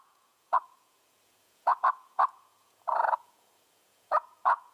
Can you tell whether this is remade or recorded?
remade